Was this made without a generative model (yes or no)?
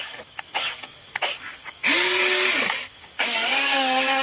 no